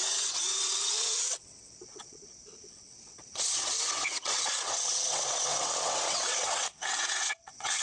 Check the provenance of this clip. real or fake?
fake